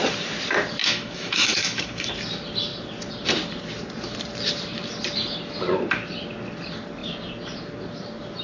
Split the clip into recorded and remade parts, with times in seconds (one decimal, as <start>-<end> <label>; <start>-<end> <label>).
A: 0.0-0.8 recorded; 0.8-2.1 remade; 2.1-8.4 recorded